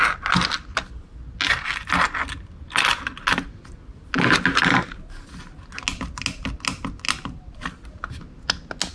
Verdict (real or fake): real